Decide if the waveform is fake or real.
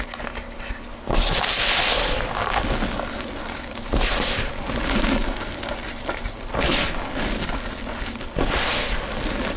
real